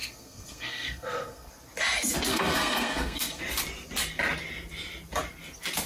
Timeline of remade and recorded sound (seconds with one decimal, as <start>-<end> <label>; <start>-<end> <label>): 0.0-1.5 remade; 1.5-2.3 recorded; 2.3-3.4 remade; 3.4-5.9 recorded